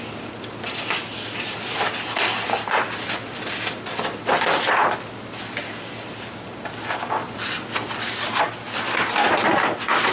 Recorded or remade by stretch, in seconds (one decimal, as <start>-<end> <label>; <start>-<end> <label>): 0.0-10.1 recorded